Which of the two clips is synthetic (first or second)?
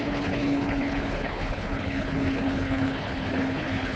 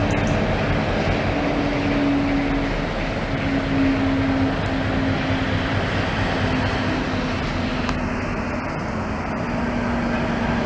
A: first